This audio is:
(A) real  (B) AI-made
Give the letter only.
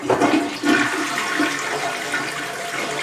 A